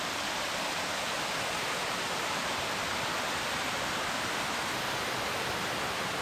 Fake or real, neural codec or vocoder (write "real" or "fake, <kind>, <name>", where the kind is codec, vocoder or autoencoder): real